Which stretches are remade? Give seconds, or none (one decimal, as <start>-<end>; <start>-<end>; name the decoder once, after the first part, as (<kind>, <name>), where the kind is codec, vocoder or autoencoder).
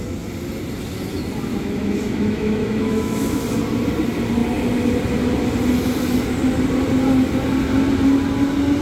1.5-3.4 (autoencoder, DAC-VAE)